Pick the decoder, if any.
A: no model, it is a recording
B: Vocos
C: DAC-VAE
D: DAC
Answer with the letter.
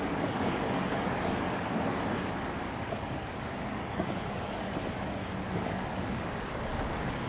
D